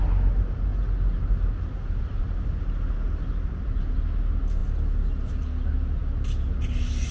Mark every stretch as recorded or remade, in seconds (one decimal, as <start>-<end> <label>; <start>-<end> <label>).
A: 0.0-7.1 recorded